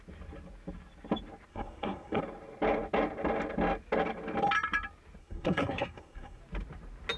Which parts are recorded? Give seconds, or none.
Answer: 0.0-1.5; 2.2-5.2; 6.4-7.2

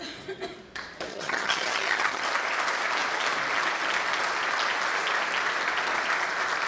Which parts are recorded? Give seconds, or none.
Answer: 0.0-1.1; 2.2-6.7

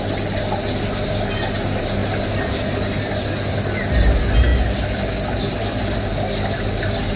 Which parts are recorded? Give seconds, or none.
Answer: 0.0-7.2

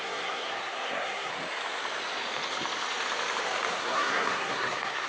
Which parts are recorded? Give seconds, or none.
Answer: 1.3-3.7